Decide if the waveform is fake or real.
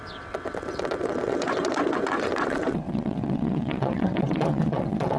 fake